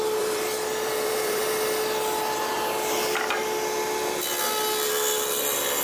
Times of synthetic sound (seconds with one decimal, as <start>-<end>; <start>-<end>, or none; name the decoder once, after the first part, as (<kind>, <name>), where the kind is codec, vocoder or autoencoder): 0.0-1.4 (vocoder, BigVGAN v2); 4.9-5.8